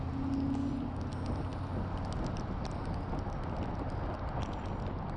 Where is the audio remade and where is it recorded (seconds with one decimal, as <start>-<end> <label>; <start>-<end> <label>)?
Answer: 0.0-5.2 recorded